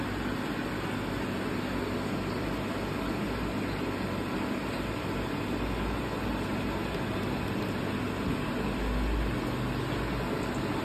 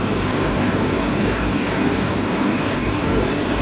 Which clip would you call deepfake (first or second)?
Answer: second